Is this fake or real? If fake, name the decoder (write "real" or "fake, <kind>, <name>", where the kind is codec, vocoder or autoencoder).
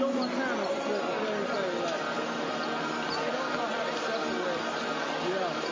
real